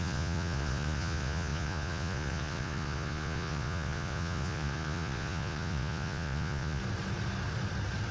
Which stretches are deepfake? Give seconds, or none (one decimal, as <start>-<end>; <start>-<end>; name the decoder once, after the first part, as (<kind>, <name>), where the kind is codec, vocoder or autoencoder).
0.0-6.8 (vocoder, Vocos)